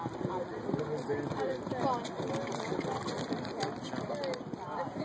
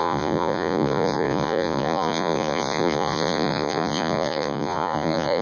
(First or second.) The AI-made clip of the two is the second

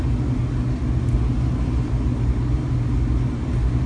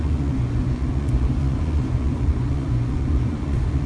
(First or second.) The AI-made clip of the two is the second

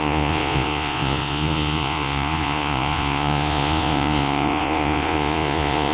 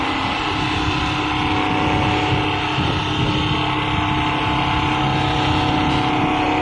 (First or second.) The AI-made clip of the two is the first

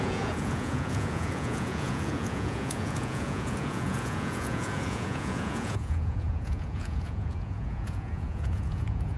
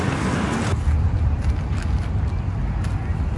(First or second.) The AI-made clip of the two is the first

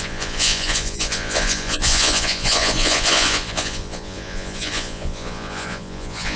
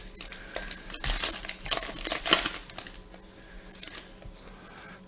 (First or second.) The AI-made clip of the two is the first